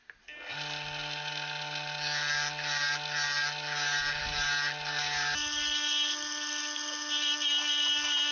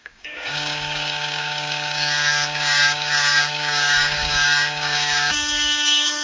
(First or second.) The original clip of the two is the first